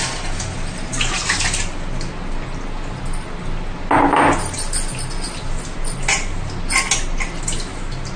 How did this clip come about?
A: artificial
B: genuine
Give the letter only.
B